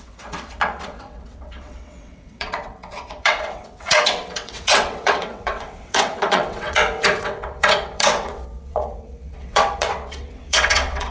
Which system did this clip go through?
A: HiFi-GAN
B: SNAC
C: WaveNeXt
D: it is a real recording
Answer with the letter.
C